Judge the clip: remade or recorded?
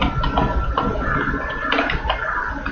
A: recorded